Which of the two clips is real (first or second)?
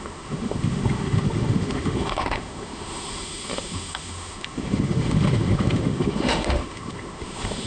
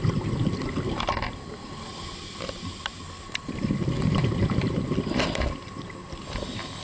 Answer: second